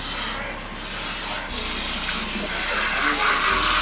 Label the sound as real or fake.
real